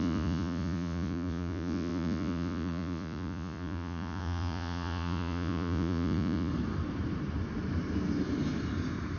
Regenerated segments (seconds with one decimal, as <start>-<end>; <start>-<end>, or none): 0.0-6.5